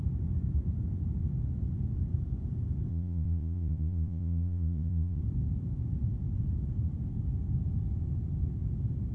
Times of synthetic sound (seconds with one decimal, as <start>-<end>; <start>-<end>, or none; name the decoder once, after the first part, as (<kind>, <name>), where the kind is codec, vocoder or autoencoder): 2.9-5.2 (vocoder, Vocos)